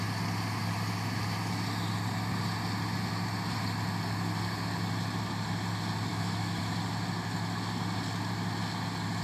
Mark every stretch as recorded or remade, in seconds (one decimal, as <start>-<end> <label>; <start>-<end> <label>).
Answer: 0.0-6.1 recorded; 6.1-6.6 remade; 6.6-9.2 recorded